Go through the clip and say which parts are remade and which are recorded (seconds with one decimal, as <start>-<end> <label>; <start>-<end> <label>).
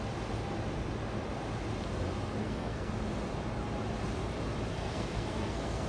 0.0-2.4 recorded; 2.4-2.9 remade; 2.9-4.7 recorded; 4.7-5.9 remade